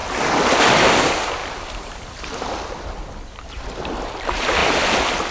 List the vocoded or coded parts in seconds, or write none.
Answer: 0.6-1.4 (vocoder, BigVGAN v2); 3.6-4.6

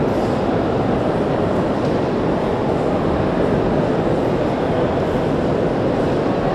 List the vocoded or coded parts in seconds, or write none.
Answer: none

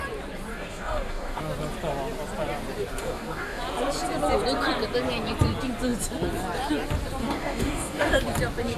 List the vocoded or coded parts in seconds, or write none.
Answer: 0.5-1.4 (codec, DAC); 3.0-3.6; 7.2-8.1

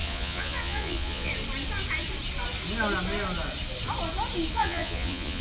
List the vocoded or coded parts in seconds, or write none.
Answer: 0.0-1.3 (vocoder, Vocos); 4.5-5.4

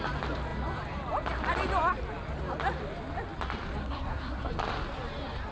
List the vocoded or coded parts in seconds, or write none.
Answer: 3.8-4.5 (codec, SNAC)